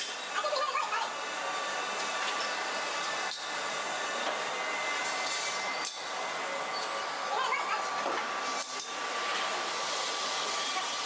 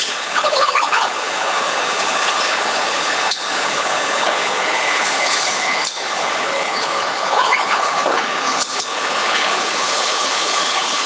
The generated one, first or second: second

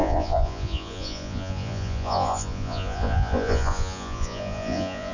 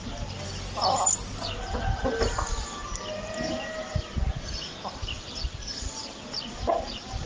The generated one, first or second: first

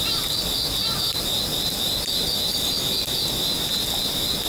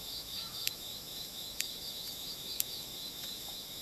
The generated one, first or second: second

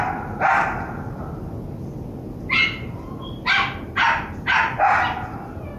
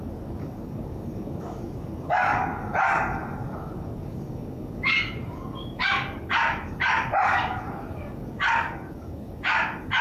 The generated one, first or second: second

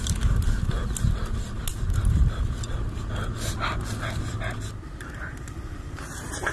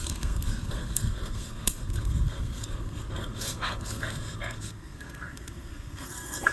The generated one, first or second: second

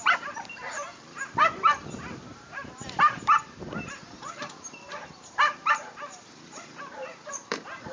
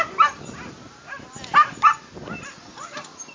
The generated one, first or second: first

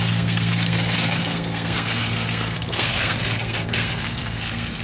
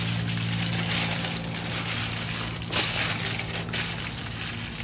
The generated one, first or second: first